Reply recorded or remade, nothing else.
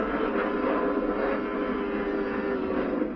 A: recorded